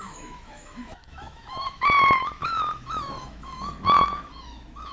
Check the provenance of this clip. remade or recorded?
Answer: remade